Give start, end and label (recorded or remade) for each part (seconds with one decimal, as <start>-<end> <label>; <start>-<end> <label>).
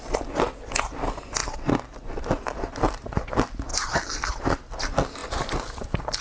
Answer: 0.0-3.7 recorded; 3.7-4.4 remade; 4.4-5.2 recorded; 5.2-6.2 remade